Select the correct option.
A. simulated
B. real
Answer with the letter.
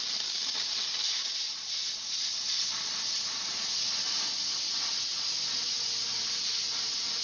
B